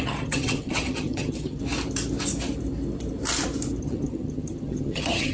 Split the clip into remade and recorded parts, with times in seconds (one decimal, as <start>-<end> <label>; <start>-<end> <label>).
0.0-1.6 remade; 1.6-3.8 recorded; 3.8-5.3 remade